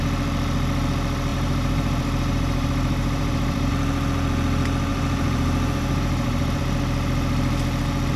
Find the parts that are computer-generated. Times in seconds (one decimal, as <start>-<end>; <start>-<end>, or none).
1.3-3.7; 4.9-6.6